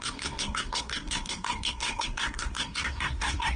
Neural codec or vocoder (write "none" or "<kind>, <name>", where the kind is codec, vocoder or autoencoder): codec, SNAC